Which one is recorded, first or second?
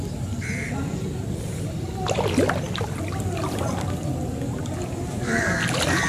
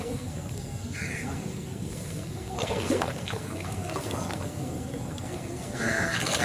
first